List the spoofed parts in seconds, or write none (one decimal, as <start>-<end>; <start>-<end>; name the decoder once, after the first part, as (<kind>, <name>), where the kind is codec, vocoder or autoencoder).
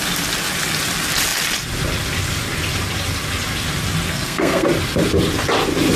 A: 4.1-4.7 (codec, SNAC)